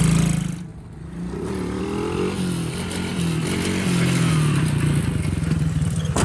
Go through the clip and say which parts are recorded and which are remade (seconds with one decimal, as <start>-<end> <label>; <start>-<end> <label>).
0.0-0.7 recorded; 0.7-1.8 remade; 1.8-6.2 recorded